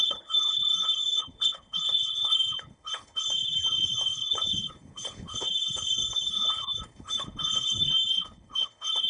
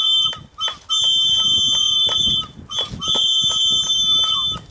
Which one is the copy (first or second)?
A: first